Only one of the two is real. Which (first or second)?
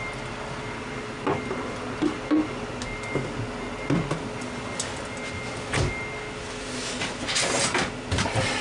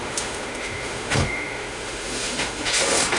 first